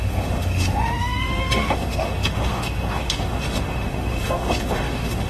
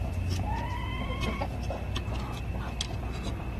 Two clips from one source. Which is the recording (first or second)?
second